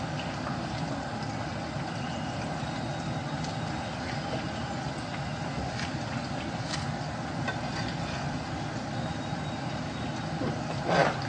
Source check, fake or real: real